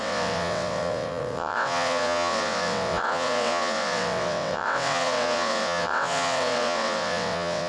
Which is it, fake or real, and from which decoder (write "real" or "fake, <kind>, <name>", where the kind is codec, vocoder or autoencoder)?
fake, vocoder, WaveNeXt